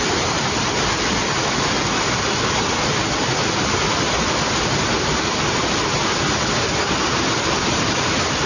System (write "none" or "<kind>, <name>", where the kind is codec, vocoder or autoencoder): none